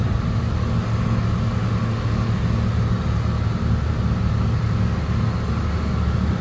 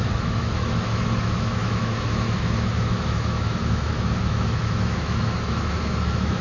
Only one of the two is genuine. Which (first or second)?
first